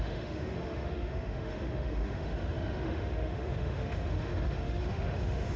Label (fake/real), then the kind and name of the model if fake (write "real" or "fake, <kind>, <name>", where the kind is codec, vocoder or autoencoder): fake, autoencoder, DAC-VAE